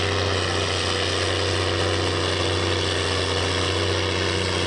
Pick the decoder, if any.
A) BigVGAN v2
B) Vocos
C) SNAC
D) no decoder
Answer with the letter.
D